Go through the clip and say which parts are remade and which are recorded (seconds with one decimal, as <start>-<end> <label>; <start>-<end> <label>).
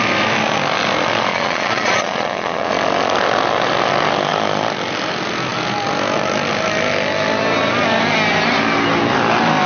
0.0-1.3 recorded; 1.3-2.7 remade; 2.7-9.7 recorded